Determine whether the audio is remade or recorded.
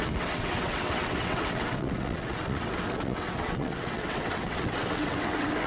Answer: remade